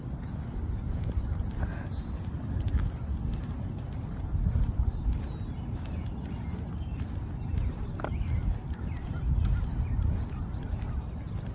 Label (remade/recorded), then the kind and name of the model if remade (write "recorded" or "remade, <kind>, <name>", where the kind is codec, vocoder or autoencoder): recorded